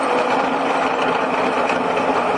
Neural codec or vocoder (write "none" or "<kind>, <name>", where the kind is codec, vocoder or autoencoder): none